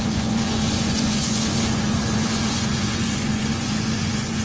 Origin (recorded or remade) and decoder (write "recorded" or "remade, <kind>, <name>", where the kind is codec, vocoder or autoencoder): remade, vocoder, Vocos